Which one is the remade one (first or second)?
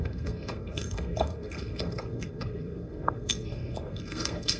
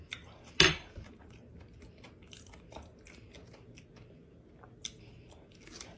first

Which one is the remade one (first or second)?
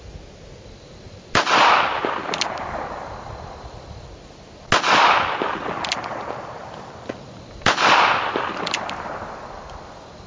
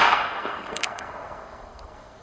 second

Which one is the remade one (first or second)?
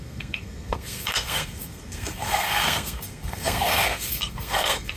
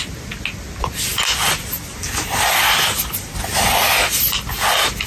first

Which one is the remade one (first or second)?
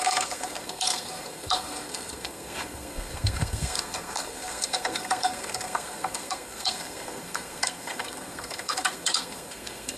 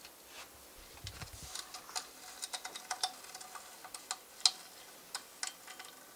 first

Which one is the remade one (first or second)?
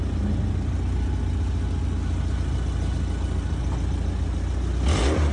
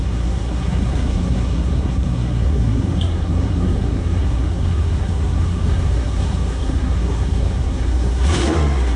second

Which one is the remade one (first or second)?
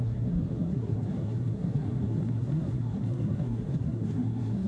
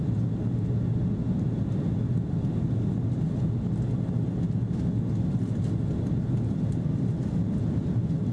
first